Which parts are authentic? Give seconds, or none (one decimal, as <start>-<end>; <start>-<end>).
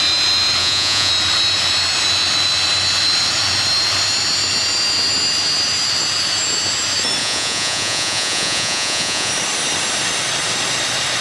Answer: 0.0-0.6; 1.1-7.2; 9.3-11.2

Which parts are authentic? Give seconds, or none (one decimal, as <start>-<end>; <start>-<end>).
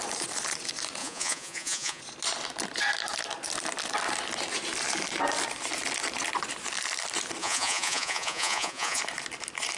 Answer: 0.0-1.0; 2.0-7.4; 9.0-9.8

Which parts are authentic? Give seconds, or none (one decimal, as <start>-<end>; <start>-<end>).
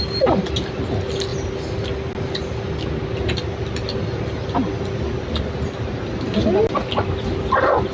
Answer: 0.0-7.9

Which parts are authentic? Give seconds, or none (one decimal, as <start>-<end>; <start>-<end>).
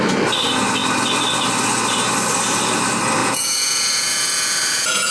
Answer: 0.0-3.2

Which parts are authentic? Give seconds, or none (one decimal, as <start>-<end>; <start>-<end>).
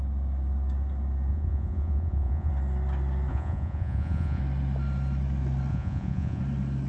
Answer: 0.0-1.3; 2.5-3.3; 4.4-5.7; 6.4-6.9